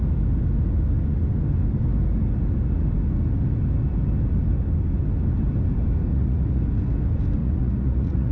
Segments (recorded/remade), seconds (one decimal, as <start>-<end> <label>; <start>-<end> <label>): 0.0-6.1 recorded; 6.1-6.6 remade; 6.6-7.4 recorded; 7.4-8.3 remade